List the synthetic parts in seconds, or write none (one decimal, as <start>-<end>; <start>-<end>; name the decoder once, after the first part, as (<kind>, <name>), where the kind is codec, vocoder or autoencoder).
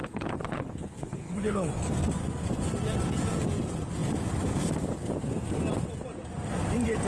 0.0-1.7 (codec, HILCodec)